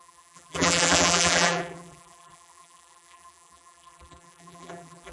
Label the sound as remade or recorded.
remade